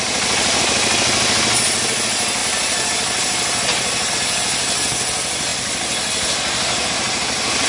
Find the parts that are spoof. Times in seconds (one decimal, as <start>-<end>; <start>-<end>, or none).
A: none